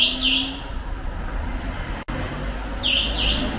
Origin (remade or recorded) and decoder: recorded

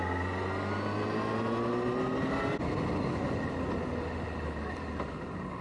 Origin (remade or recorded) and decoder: recorded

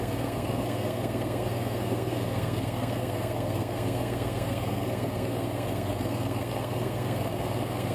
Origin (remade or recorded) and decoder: remade, codec, SNAC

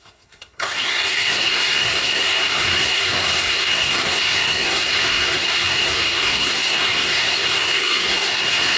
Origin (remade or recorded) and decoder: remade, codec, SNAC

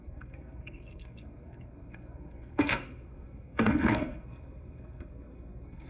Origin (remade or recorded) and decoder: remade, codec, SNAC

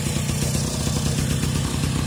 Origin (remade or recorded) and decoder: recorded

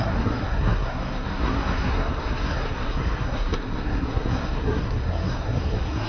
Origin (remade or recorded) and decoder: remade, codec, SNAC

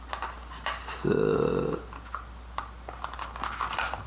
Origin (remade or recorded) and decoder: recorded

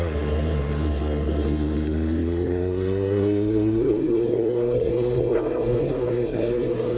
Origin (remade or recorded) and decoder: remade, codec, SNAC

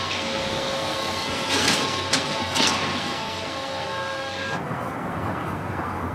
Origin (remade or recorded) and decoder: remade, codec, SNAC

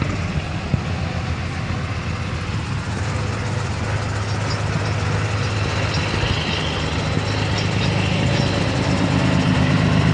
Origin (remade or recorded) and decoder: recorded